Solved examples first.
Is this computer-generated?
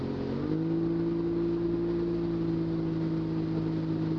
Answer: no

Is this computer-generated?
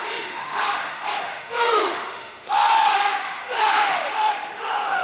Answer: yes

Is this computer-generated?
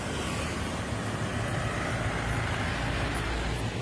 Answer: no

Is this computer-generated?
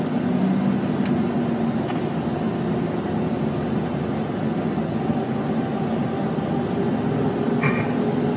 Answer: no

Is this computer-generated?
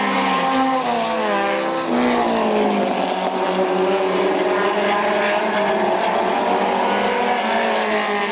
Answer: no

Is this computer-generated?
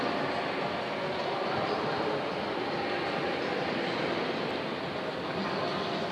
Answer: no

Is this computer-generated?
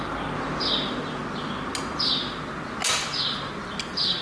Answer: no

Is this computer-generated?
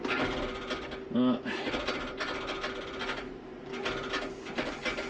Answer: no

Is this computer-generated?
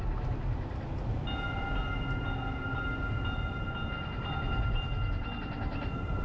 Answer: no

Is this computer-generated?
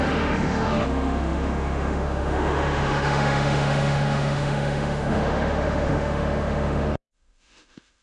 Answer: yes